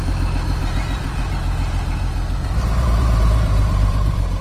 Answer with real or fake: fake